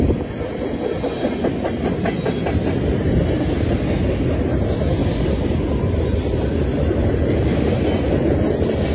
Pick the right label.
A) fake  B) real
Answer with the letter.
B